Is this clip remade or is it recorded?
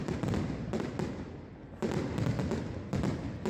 recorded